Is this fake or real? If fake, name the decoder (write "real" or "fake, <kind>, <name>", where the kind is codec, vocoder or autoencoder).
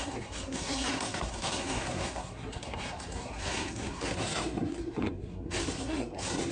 fake, codec, SNAC